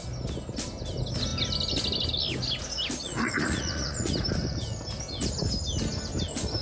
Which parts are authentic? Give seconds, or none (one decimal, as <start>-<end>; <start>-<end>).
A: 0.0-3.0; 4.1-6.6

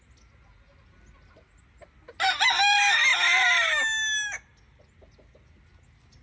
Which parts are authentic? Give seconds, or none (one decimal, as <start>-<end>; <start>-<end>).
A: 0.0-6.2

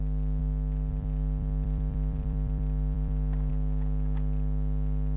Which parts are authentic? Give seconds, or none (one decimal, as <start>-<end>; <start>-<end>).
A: 0.0-0.4; 3.5-5.2

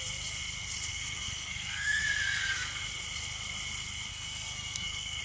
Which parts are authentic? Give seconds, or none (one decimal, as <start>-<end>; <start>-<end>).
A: 0.0-0.9; 2.0-4.1

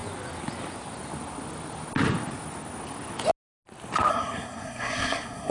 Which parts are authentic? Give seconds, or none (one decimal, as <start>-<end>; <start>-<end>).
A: 0.0-4.1

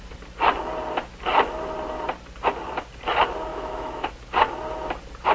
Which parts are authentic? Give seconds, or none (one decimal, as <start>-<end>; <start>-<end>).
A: 0.0-3.5; 4.1-5.3

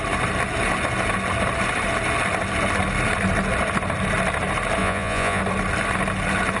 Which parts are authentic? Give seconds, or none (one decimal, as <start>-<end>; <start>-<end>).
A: 0.0-4.8; 5.4-6.6